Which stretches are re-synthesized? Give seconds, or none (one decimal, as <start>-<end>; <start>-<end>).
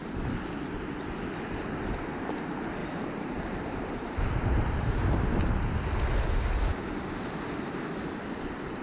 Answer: 2.8-5.0